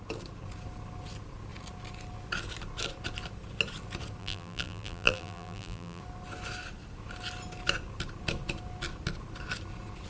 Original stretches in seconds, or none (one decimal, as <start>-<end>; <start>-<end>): 0.0-4.2; 6.0-10.1

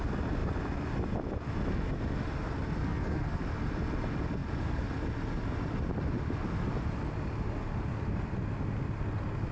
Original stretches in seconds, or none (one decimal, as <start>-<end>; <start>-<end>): 0.0-2.8; 3.4-9.5